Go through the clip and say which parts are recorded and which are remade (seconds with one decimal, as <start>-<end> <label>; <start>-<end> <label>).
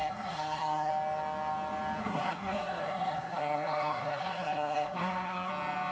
0.0-0.9 remade; 0.9-2.0 recorded; 2.0-5.5 remade; 5.5-5.9 recorded